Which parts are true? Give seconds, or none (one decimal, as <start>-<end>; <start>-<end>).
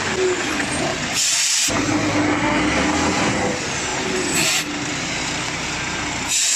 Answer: 0.0-6.6